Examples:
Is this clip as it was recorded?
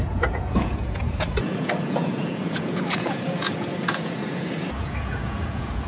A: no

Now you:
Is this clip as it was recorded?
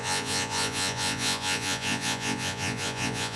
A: no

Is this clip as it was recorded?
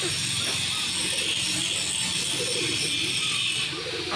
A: yes